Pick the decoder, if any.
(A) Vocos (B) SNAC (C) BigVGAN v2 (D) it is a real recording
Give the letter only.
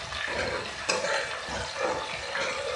D